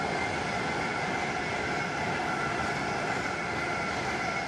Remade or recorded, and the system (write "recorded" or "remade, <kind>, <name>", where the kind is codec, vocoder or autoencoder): recorded